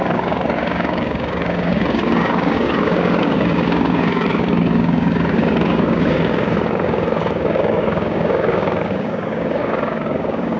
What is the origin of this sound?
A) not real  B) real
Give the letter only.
A